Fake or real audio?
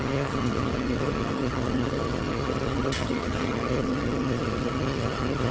fake